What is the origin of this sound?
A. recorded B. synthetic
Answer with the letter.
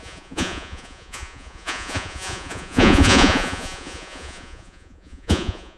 B